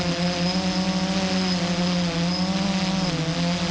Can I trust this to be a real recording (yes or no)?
yes